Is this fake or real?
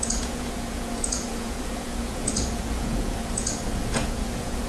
fake